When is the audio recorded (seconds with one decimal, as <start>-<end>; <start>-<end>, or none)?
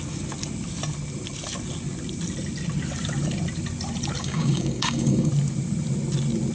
0.0-4.2; 5.3-6.5